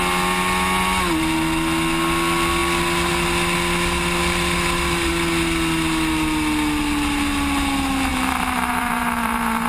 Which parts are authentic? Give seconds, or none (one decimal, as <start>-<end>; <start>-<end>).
0.0-8.1